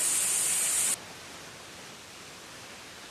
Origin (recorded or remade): recorded